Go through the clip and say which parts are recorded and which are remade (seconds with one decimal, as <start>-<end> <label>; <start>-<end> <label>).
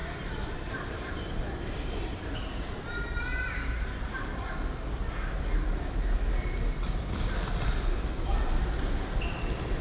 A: 0.0-4.1 remade; 4.1-9.8 recorded